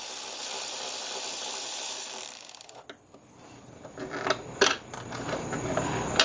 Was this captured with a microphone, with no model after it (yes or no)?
yes